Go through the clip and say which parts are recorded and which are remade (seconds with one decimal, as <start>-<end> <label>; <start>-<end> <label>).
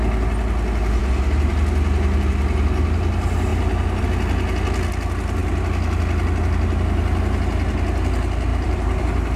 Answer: 0.0-8.5 recorded; 8.5-9.4 remade